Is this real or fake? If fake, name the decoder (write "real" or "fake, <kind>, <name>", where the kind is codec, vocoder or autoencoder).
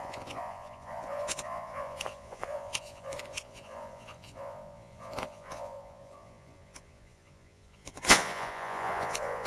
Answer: fake, vocoder, Vocos